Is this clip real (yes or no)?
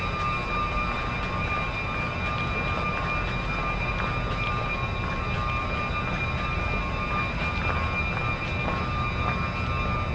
yes